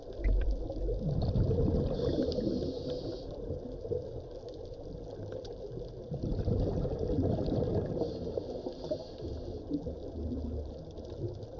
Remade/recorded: recorded